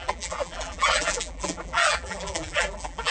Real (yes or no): no